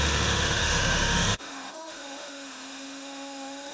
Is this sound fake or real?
fake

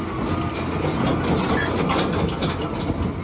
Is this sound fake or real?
real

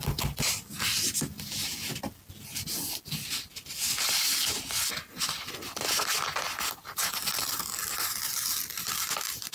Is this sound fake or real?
real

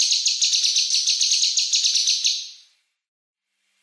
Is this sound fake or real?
real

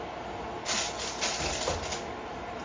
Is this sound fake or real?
real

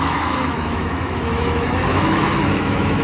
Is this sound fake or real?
fake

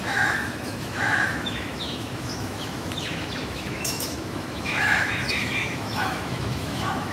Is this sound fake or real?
fake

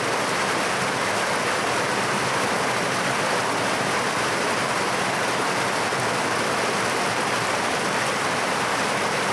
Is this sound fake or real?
real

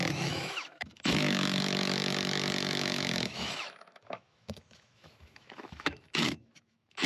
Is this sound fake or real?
fake